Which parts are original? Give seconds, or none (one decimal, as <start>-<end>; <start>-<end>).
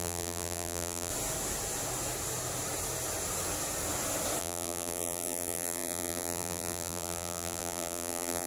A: 1.1-4.4